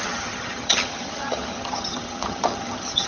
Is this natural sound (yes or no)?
no